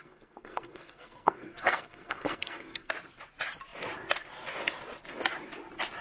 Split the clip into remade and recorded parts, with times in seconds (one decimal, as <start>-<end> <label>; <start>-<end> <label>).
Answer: 0.0-2.9 remade; 2.9-6.0 recorded